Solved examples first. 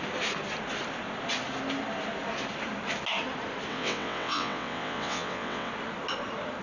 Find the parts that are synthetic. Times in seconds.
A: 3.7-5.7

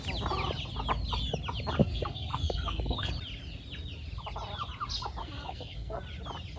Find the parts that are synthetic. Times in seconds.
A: 1.8-3.1; 5.2-6.0